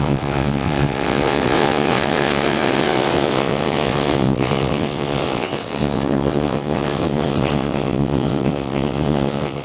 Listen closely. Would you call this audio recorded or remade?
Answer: remade